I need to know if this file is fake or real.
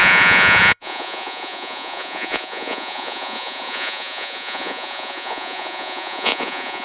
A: fake